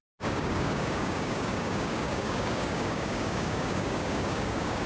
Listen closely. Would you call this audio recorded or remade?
remade